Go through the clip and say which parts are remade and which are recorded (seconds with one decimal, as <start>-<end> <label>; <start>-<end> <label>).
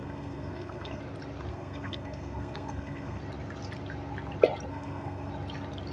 0.0-1.0 remade; 1.0-1.5 recorded; 1.5-3.2 remade; 3.2-4.7 recorded; 4.7-5.3 remade; 5.3-5.9 recorded